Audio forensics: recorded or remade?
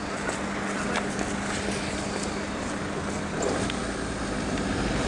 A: recorded